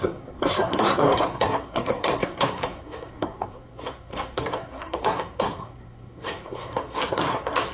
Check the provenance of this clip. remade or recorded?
remade